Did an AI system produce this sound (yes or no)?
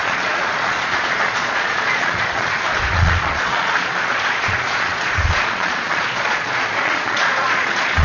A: yes